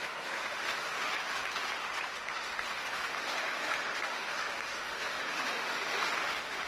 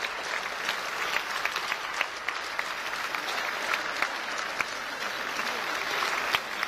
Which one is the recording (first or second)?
second